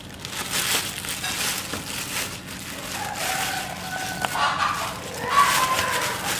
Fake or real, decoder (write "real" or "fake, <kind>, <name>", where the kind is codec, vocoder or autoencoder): real